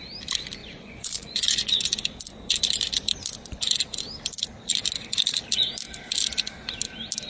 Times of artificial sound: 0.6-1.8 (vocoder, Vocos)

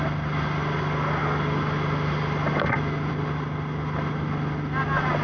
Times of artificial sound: none